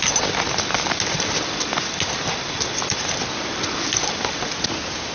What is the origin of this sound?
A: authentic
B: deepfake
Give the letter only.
A